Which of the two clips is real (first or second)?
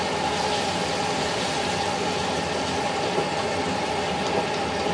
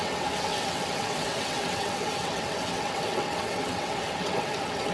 first